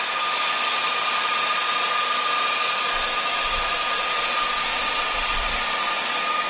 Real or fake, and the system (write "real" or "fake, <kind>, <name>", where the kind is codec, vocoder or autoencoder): real